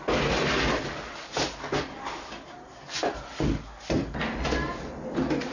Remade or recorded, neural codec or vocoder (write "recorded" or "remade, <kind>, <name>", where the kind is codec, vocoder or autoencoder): recorded